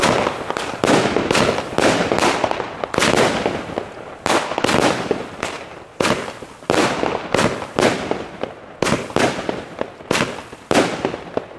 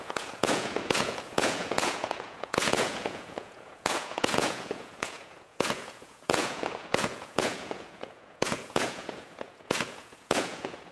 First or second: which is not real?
second